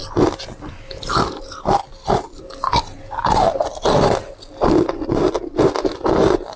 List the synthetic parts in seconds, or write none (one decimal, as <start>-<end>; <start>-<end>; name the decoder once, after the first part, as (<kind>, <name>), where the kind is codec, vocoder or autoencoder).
none

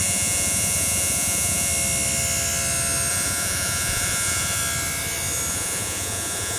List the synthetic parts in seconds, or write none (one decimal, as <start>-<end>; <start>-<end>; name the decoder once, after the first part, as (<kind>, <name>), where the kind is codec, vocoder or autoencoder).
0.0-1.7 (vocoder, Vocos); 3.1-4.6; 5.5-6.6

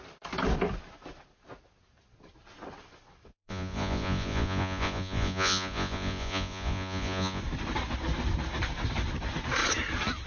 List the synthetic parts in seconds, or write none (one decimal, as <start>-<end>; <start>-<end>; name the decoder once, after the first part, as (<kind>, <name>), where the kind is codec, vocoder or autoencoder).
3.3-7.4 (vocoder, Vocos)

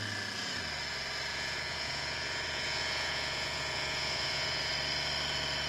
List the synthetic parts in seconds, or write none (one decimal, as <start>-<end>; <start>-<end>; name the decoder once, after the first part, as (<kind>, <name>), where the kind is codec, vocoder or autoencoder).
1.3-4.7 (vocoder, Vocos)

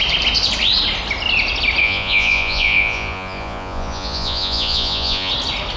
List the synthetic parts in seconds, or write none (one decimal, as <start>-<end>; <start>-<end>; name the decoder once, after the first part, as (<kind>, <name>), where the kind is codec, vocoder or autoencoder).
1.8-5.3 (vocoder, Vocos)

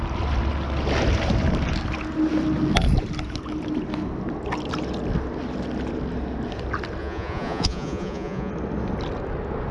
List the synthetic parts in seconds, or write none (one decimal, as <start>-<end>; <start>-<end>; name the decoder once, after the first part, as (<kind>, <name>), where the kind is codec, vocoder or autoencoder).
7.0-8.5 (vocoder, Vocos)

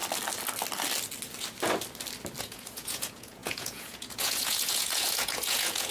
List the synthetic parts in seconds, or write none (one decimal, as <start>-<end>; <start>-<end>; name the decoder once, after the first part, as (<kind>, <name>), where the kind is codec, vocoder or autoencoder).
2.4-5.9 (vocoder, Vocos)